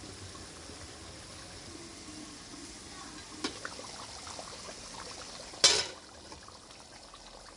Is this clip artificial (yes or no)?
no